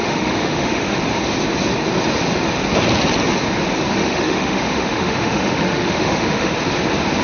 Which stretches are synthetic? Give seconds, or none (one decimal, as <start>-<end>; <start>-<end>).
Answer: 0.0-1.0; 4.0-6.5